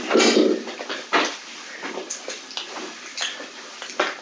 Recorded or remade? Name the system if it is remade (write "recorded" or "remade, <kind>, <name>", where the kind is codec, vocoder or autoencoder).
recorded